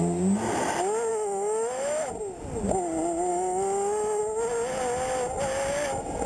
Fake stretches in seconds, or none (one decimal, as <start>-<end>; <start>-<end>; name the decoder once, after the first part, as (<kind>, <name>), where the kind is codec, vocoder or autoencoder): 1.1-2.1 (autoencoder, DAC-VAE); 3.3-4.2

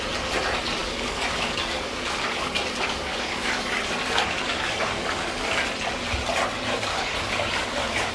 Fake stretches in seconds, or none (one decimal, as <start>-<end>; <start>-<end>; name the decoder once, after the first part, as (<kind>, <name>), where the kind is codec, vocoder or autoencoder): 0.8-5.7 (codec, DAC); 6.7-8.1

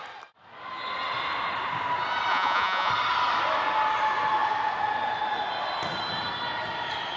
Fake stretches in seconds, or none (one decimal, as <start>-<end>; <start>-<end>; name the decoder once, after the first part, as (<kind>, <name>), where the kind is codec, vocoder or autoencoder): 2.3-2.9 (vocoder, Vocos)

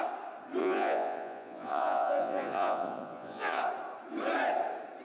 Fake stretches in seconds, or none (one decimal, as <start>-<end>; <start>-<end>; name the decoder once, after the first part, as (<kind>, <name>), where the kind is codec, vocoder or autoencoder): 0.6-3.6 (vocoder, Vocos)

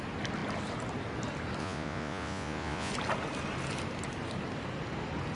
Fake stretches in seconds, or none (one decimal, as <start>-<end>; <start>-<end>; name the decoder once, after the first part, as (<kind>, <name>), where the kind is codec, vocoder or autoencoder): 1.6-2.9 (vocoder, Vocos)